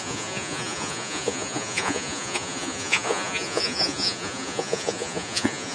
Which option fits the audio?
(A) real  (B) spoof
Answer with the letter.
B